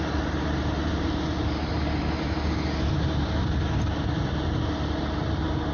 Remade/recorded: recorded